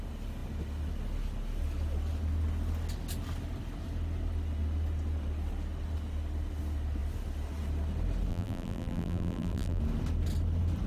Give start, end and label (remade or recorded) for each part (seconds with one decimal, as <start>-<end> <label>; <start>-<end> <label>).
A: 0.0-8.3 recorded; 8.3-9.8 remade; 9.8-10.9 recorded